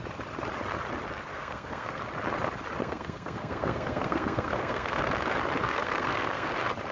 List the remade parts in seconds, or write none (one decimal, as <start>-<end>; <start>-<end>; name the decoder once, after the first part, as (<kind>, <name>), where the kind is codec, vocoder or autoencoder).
1.3-2.0 (codec, SNAC); 2.8-5.0; 5.6-6.5